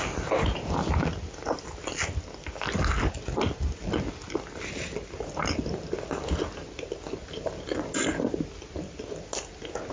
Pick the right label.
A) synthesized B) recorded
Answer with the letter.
B